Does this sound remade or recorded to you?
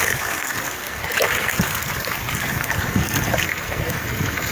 remade